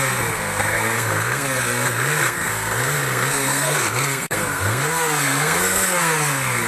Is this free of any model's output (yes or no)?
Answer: no